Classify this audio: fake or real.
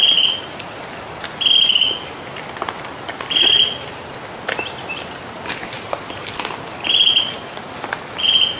real